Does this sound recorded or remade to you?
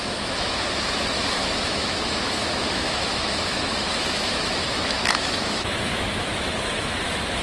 remade